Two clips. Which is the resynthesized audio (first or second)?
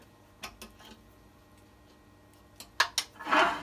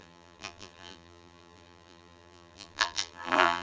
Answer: second